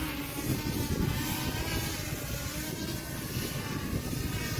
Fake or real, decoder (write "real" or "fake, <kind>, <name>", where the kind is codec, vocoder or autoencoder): real